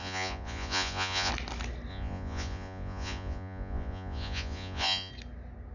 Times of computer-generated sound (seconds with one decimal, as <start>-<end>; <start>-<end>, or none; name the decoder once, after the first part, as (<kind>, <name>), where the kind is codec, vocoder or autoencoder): 0.0-1.3 (vocoder, Vocos); 1.9-5.1